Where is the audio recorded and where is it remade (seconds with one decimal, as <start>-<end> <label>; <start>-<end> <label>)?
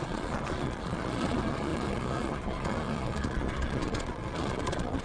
0.0-5.0 remade